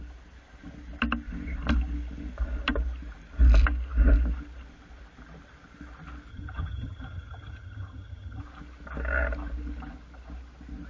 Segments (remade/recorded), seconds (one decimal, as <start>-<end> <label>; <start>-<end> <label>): 0.0-6.3 recorded; 6.3-8.4 remade; 8.4-10.9 recorded